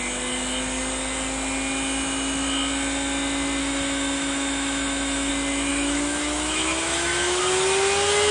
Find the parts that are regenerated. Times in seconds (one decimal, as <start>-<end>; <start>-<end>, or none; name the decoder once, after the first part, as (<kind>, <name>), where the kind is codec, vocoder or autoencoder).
3.6-5.3 (autoencoder, DAC-VAE); 5.7-7.4